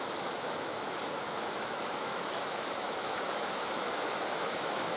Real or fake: fake